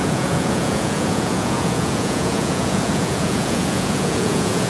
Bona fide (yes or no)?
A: no